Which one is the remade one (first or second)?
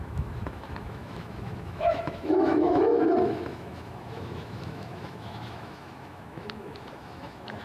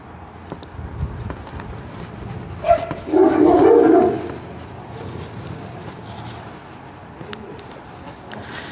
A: first